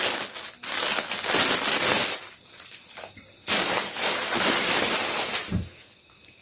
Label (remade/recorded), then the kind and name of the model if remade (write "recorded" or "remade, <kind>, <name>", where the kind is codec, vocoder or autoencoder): recorded